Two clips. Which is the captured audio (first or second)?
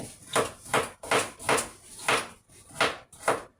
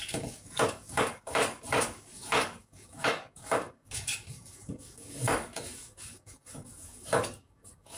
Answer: first